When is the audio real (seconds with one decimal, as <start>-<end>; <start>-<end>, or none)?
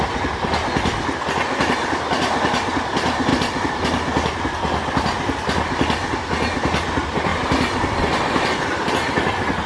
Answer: 0.0-3.3; 4.4-7.3; 8.9-9.7